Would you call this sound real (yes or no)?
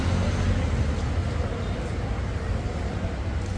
yes